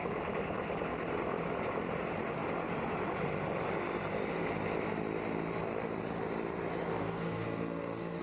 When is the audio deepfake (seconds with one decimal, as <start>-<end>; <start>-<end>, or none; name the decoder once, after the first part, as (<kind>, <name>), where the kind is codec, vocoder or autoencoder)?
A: 7.0-8.2 (codec, SNAC)